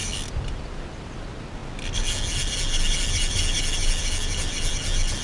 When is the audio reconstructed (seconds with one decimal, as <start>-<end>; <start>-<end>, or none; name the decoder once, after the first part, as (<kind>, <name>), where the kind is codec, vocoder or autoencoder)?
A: none

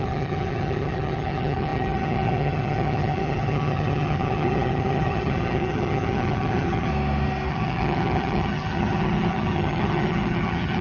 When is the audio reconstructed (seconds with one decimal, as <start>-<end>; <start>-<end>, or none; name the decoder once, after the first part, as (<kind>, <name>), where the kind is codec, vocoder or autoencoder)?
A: 0.0-6.9 (vocoder, HiFi-GAN); 7.5-10.8